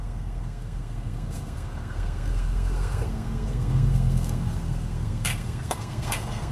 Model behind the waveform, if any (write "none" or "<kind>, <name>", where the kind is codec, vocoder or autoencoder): codec, SNAC